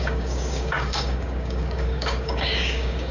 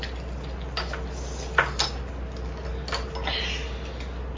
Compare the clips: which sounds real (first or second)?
second